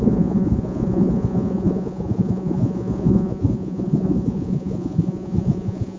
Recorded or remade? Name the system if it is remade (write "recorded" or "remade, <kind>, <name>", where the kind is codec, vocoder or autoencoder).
remade, vocoder, Vocos